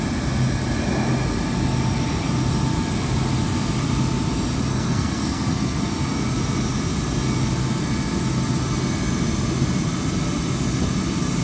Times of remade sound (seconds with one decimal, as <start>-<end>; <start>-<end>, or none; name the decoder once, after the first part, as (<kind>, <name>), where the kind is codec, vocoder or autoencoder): 4.7-5.8 (codec, SNAC)